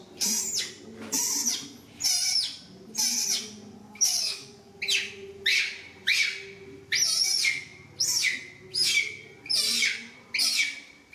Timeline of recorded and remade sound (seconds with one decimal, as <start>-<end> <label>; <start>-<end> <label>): 0.0-3.8 recorded; 3.8-4.7 remade; 4.7-11.1 recorded